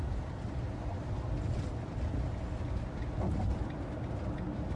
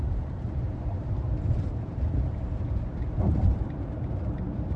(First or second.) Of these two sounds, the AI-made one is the second